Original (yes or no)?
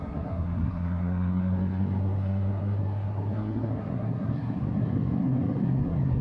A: no